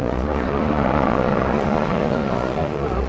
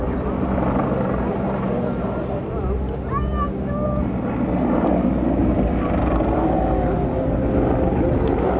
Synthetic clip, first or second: first